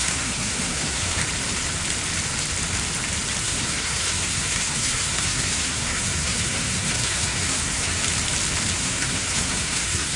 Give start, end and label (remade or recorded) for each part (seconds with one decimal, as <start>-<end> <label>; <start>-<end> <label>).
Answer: 0.0-1.2 remade; 1.2-3.4 recorded; 3.4-8.0 remade; 8.0-8.7 recorded; 8.7-10.2 remade